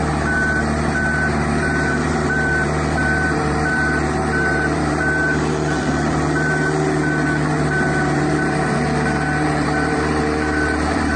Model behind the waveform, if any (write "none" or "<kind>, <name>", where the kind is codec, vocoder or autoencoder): vocoder, BigVGAN v2